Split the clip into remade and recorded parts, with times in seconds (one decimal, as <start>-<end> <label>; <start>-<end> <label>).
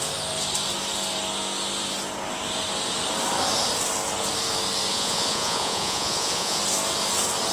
0.0-4.9 recorded; 4.9-6.6 remade; 6.6-7.5 recorded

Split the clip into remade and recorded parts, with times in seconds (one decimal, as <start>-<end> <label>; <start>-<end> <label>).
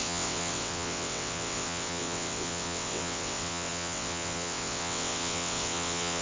0.0-6.2 remade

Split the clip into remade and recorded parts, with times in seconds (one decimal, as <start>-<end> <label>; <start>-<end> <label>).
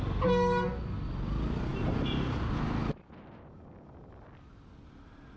0.0-5.4 recorded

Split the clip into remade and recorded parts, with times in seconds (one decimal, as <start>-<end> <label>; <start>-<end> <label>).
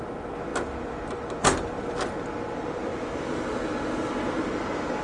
0.0-5.0 recorded